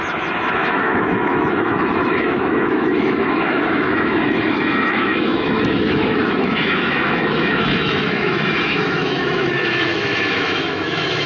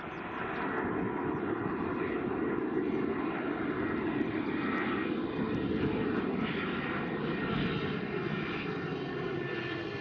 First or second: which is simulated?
first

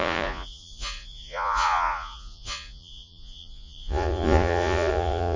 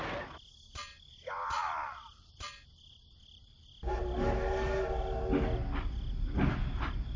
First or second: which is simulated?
first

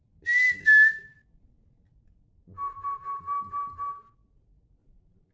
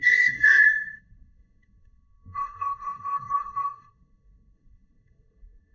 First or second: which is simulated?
second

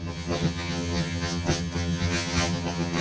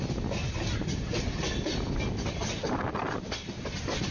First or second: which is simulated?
first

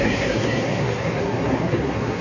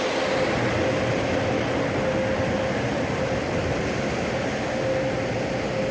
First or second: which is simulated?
first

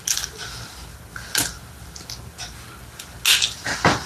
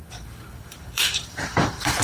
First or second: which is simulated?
second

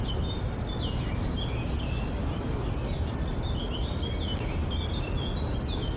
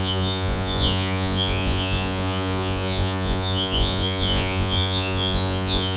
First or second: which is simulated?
second